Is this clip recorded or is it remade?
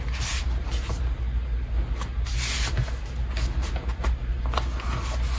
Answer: recorded